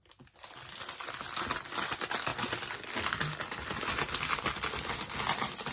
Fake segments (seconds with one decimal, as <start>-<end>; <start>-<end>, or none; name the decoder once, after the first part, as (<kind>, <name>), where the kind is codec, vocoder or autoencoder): none